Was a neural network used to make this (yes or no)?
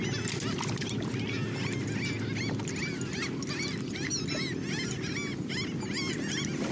no